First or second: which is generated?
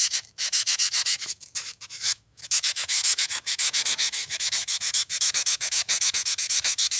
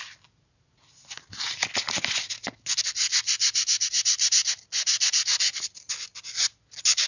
first